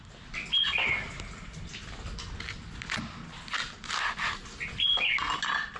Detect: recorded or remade recorded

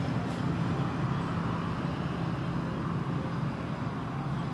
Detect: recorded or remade recorded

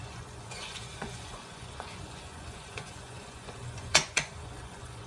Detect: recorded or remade remade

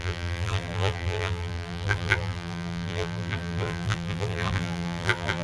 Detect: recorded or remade remade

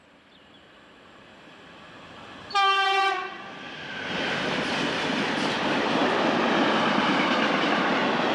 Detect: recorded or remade remade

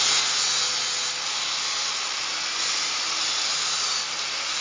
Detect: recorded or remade recorded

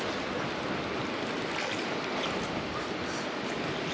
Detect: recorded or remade recorded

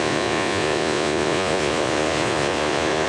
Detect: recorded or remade remade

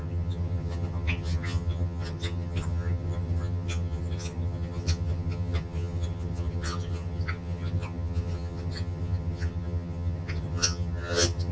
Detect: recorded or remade remade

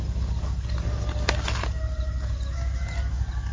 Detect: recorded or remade recorded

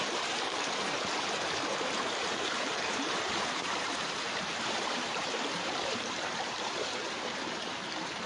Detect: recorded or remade remade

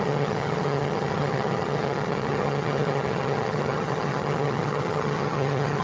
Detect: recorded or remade remade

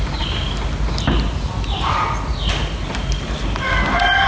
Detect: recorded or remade recorded